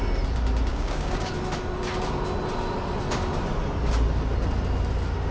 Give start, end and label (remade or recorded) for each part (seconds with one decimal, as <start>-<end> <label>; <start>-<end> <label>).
0.0-0.7 recorded; 0.7-1.3 remade; 1.3-5.3 recorded